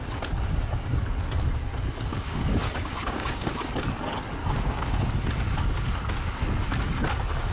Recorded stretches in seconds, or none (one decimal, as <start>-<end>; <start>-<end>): 0.0-2.1; 3.5-4.4; 5.1-7.5